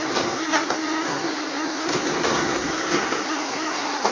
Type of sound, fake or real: fake